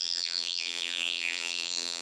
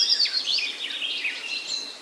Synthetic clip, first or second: first